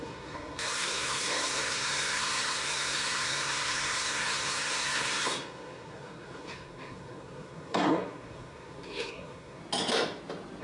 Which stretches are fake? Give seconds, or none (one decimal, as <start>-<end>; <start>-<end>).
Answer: 0.0-9.6